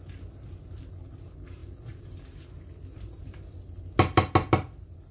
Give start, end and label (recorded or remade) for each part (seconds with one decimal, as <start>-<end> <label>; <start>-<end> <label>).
0.0-5.1 recorded